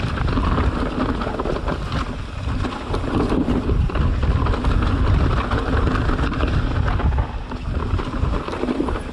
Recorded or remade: recorded